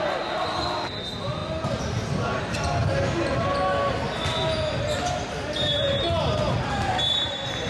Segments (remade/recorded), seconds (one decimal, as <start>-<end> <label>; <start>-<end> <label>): 0.0-7.7 recorded